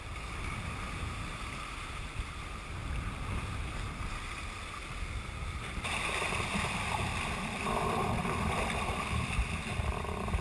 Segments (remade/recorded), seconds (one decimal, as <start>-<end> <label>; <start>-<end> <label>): 0.0-2.8 remade; 2.8-5.4 recorded; 5.4-10.4 remade